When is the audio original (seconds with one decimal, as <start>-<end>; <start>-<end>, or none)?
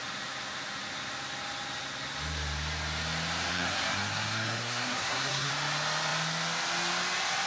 0.0-3.5; 5.5-7.5